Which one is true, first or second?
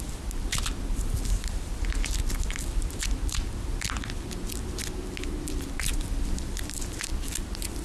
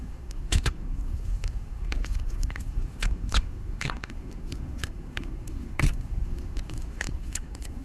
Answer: first